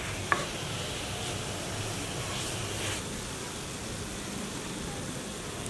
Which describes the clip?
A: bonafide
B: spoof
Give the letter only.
A